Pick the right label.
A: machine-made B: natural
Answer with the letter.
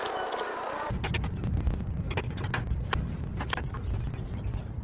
B